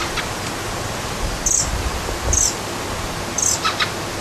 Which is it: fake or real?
real